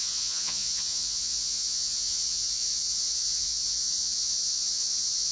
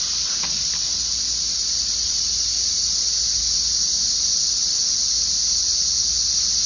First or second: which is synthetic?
first